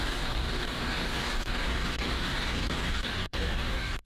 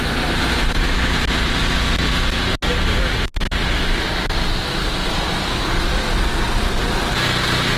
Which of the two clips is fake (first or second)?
first